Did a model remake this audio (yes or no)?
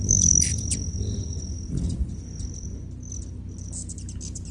no